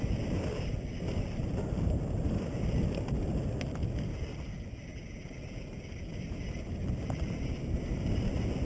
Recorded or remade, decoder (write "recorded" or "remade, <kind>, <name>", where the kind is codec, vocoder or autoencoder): recorded